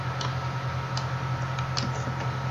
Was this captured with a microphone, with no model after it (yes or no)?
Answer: yes